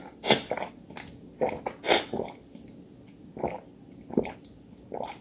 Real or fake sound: real